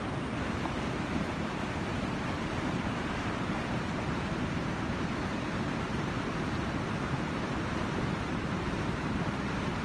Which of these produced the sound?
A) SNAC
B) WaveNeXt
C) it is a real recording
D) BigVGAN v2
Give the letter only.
D